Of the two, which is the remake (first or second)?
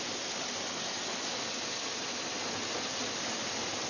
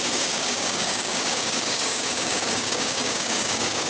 second